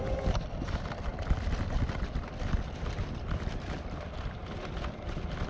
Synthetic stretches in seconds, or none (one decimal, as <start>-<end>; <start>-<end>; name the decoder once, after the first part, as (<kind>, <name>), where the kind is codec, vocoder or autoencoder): none